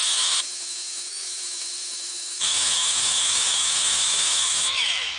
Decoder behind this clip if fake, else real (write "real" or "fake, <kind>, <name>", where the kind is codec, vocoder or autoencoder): fake, autoencoder, DAC-VAE